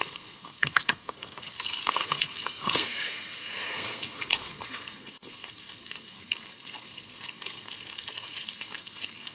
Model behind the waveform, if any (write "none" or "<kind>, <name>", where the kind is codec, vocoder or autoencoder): codec, SNAC